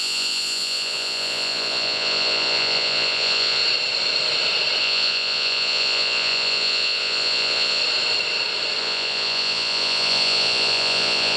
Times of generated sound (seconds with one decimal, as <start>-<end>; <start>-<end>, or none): 0.0-3.6; 4.8-7.8; 8.8-11.4